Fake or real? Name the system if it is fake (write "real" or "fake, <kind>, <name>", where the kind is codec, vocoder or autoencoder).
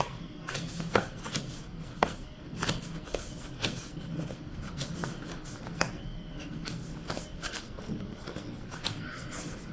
fake, codec, SNAC